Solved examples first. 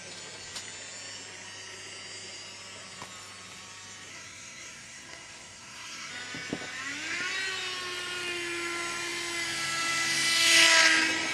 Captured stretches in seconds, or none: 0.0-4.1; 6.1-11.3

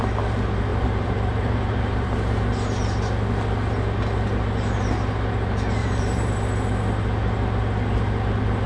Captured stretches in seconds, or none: 0.0-0.7; 2.5-5.8; 6.3-8.7

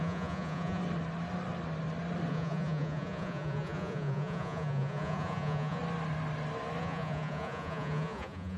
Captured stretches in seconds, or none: 0.8-2.3; 5.8-6.8

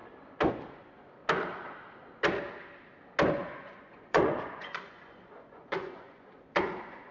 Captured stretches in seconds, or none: 0.0-0.5; 1.2-3.3

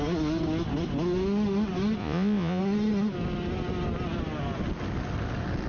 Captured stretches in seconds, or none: 0.0-2.0; 2.6-5.7

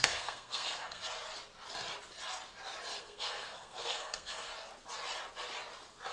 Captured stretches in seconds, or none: 1.0-3.0; 4.5-6.1